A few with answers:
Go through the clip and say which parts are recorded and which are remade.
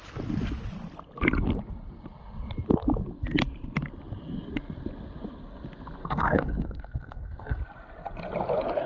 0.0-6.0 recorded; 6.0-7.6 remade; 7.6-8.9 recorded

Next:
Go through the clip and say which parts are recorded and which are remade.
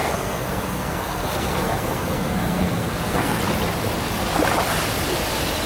0.0-3.4 remade; 3.4-5.7 recorded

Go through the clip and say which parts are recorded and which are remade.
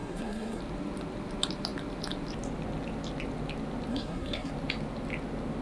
0.0-0.6 remade; 0.6-3.9 recorded; 3.9-4.5 remade; 4.5-5.6 recorded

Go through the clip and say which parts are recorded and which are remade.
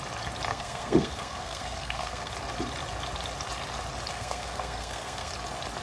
0.0-0.5 recorded; 0.5-2.3 remade; 2.3-4.1 recorded; 4.1-5.3 remade; 5.3-5.8 recorded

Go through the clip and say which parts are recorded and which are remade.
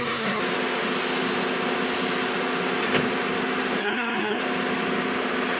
0.0-0.4 remade; 0.4-3.8 recorded; 3.8-4.4 remade; 4.4-5.6 recorded